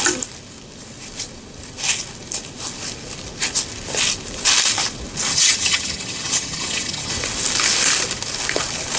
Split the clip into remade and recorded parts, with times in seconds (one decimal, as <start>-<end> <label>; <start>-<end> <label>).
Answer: 0.0-5.3 recorded; 5.3-7.1 remade; 7.1-9.0 recorded